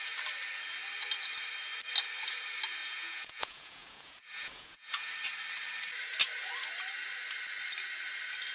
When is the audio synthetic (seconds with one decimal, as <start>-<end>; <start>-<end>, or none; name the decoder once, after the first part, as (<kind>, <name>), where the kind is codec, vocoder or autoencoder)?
2.8-5.1 (vocoder, Vocos)